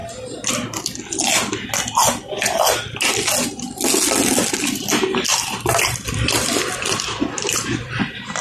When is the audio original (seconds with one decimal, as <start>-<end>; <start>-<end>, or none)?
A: 0.0-5.3